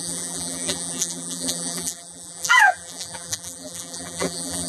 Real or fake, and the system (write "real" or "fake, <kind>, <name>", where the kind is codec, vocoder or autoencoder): fake, vocoder, BigVGAN v2